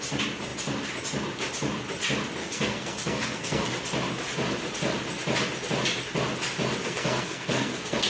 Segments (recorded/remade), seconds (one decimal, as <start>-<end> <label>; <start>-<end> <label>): 0.0-2.4 recorded; 2.4-3.7 remade; 3.7-6.8 recorded; 6.8-8.1 remade

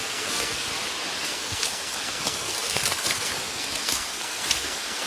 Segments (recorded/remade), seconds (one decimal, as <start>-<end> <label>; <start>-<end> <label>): 0.0-0.7 remade; 0.7-1.2 recorded; 1.2-5.1 remade

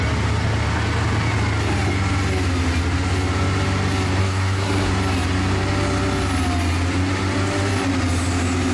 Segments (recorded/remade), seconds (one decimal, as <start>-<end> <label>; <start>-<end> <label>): 0.0-4.2 recorded; 4.2-4.9 remade; 4.9-8.7 recorded

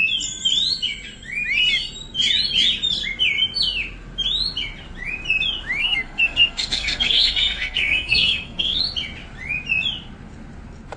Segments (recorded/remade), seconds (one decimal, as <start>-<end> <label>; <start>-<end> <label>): 0.0-5.8 recorded; 5.8-8.8 remade; 8.8-11.0 recorded

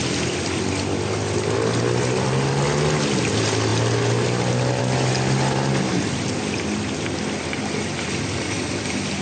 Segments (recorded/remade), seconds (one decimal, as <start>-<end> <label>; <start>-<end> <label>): 0.0-9.2 recorded

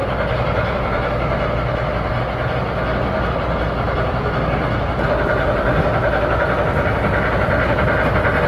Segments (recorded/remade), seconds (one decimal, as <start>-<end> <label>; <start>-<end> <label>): 0.0-8.5 recorded

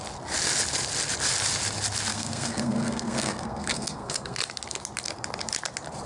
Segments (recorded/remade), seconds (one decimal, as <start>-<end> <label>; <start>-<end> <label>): 0.0-2.1 recorded; 2.1-4.4 remade; 4.4-6.1 recorded

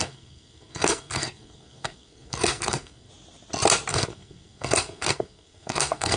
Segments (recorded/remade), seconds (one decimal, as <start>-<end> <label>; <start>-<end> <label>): 0.0-3.1 remade; 3.1-3.9 recorded; 3.9-6.2 remade